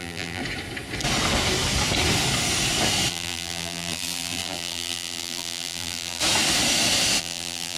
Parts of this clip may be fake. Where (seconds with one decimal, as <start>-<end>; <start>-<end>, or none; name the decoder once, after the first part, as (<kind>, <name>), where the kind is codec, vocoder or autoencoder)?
0.0-0.4 (vocoder, BigVGAN v2); 3.1-6.2; 7.2-7.8